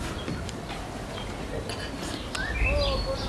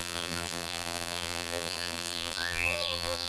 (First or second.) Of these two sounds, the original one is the first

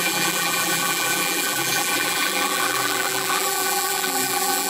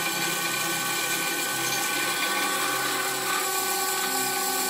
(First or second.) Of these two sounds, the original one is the second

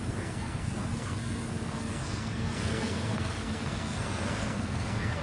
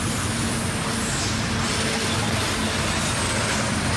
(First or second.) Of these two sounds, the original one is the second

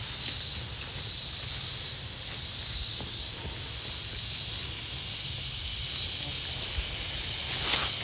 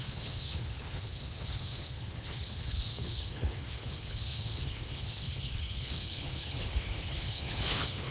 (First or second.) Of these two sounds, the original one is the first